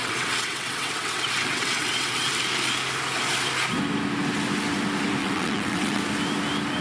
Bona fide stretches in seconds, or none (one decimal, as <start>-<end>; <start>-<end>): 2.3-5.2; 6.0-6.8